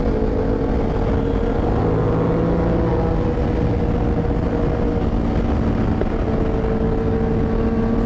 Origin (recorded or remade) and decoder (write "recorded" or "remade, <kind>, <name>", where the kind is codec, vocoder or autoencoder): recorded